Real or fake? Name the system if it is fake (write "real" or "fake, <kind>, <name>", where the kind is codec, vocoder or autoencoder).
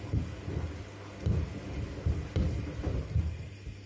real